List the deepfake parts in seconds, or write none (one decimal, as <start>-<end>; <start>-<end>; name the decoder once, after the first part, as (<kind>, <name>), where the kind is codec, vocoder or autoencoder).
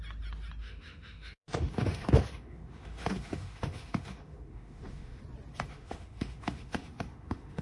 0.6-5.2 (autoencoder, DAC-VAE); 5.7-7.6